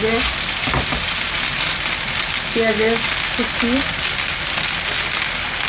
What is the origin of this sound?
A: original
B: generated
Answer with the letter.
A